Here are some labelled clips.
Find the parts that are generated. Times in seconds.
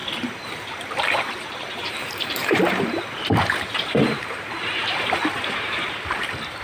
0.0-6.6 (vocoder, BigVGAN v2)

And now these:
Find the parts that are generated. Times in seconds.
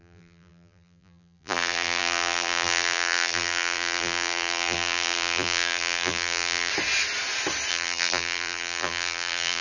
0.0-6.7 (vocoder, BigVGAN v2); 7.7-9.6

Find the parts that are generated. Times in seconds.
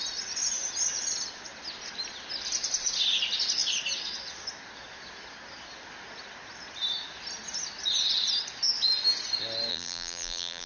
9.7-10.7 (vocoder, BigVGAN v2)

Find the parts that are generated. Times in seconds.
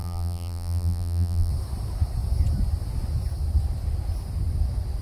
0.0-1.5 (vocoder, BigVGAN v2)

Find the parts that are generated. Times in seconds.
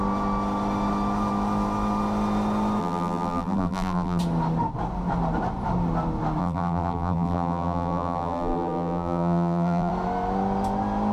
2.8-4.2 (vocoder, BigVGAN v2); 6.4-9.9